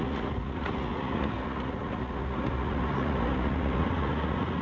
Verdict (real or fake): fake